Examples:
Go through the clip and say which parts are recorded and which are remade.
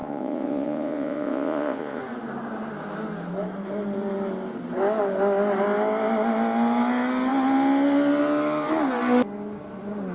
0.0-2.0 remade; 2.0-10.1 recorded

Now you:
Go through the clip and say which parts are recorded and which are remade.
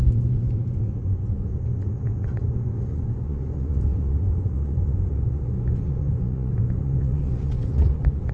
0.0-8.3 remade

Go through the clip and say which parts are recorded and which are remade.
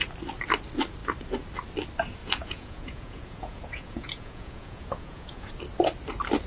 0.0-2.2 recorded; 2.2-5.5 remade; 5.5-6.5 recorded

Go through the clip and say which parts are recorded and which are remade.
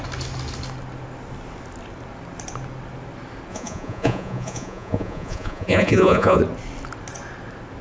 0.0-3.5 recorded; 3.5-6.4 remade; 6.4-7.8 recorded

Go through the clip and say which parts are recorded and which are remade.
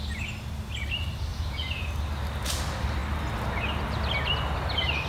0.0-1.3 recorded; 1.3-1.9 remade; 1.9-5.1 recorded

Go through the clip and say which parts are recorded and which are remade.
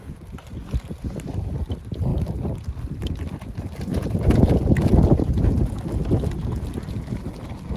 0.0-3.9 recorded; 3.9-4.6 remade; 4.6-7.8 recorded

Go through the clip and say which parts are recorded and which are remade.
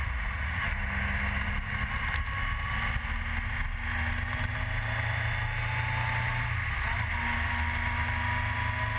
0.0-0.6 remade; 0.6-9.0 recorded